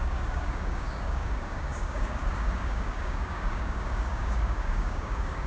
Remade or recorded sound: remade